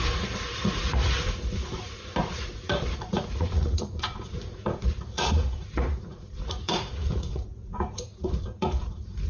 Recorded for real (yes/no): no